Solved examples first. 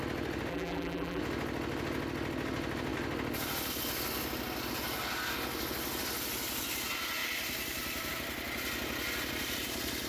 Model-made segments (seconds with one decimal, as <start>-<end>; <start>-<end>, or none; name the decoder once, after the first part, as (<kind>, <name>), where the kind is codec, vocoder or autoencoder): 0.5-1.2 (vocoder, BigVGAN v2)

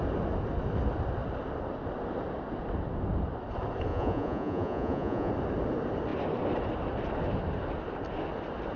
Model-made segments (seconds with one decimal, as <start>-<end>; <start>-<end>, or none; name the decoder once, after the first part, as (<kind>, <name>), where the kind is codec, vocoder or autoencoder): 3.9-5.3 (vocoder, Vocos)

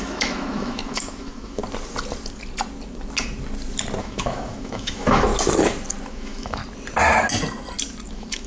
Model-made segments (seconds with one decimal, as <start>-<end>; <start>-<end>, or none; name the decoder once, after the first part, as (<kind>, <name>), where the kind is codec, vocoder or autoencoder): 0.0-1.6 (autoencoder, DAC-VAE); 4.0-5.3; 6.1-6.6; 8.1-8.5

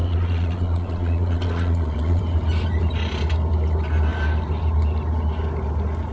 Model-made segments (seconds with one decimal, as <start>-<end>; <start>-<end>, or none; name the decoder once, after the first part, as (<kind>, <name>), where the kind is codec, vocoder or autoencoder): 0.0-2.2 (vocoder, Vocos)

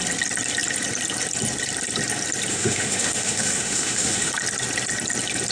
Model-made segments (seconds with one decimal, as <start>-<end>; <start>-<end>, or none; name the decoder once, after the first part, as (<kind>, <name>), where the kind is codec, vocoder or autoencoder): 2.5-4.3 (autoencoder, DAC-VAE)

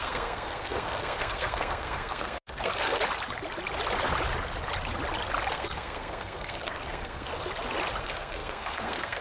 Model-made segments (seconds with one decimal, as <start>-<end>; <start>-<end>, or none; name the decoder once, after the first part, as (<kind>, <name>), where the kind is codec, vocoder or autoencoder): 0.0-3.0 (codec, SNAC); 5.5-7.3; 8.0-9.2